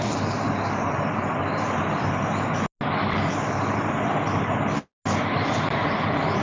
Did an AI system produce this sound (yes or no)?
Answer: no